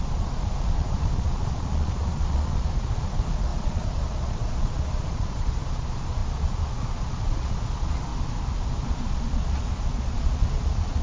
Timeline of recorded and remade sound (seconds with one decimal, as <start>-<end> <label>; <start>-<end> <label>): 0.0-8.1 remade; 8.1-8.8 recorded; 8.8-11.0 remade